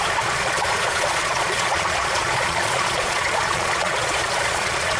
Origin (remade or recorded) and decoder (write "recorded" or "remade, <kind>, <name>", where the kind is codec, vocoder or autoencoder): remade, vocoder, Vocos